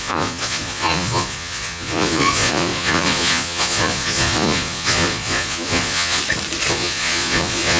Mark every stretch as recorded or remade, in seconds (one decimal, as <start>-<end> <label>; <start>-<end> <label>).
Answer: 0.0-6.2 remade; 6.2-6.7 recorded; 6.7-7.8 remade